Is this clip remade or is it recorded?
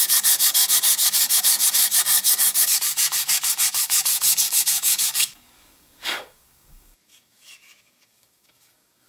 remade